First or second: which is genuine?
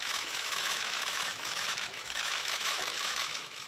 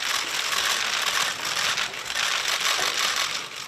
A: second